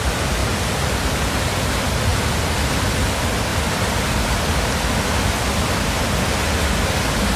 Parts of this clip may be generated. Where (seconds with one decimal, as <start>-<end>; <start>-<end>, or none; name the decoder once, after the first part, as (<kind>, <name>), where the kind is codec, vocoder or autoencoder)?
0.4-1.0 (vocoder, BigVGAN v2); 2.1-2.7